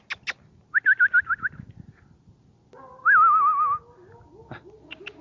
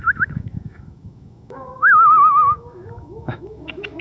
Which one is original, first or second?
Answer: first